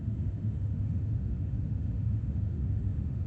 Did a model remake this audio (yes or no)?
yes